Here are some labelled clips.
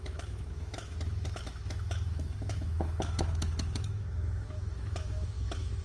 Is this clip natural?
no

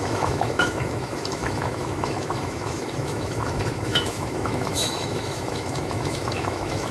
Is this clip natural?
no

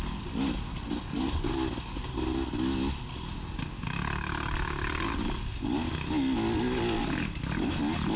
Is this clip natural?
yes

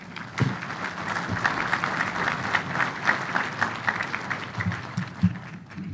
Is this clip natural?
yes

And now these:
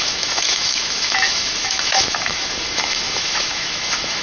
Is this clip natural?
no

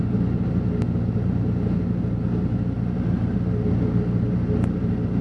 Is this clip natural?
yes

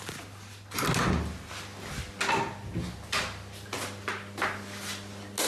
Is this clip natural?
yes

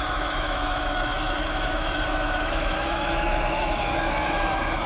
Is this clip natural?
no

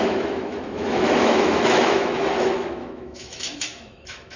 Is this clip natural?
no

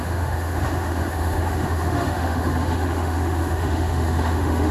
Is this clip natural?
no